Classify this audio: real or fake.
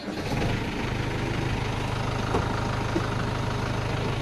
real